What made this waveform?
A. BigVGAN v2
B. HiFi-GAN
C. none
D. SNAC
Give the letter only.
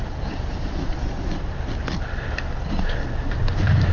C